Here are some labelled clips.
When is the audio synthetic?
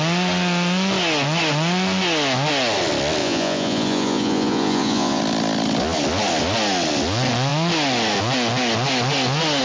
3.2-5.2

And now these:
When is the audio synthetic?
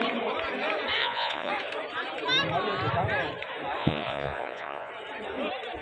1.0-1.5; 3.8-4.9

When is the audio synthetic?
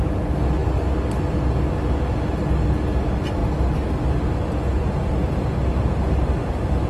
none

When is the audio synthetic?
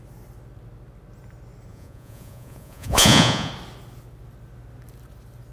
1.7-3.5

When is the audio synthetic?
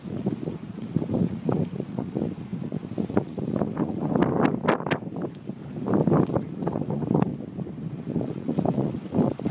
0.0-4.2; 6.3-7.3; 7.9-9.5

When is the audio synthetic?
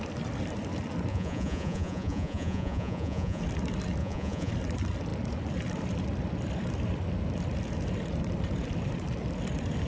1.1-3.4; 4.0-4.5